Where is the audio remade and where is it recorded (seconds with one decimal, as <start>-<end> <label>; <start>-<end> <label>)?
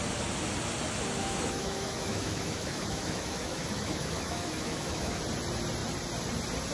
0.0-1.2 recorded; 1.2-5.2 remade; 5.2-6.7 recorded